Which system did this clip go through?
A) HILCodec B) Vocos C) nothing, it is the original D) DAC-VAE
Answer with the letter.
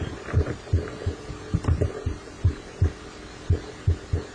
C